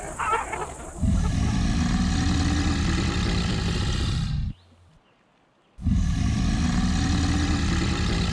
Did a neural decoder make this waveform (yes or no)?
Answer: no